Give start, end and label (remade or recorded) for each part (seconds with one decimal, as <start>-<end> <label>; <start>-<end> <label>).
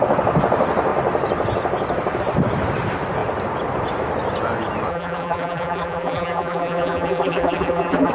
0.0-4.9 recorded; 4.9-8.1 remade